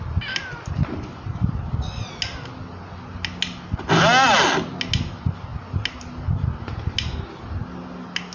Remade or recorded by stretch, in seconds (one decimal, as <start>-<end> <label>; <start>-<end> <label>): 0.0-8.3 recorded